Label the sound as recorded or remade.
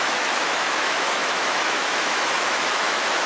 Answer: remade